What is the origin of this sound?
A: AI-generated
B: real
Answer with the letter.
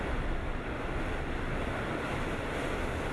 B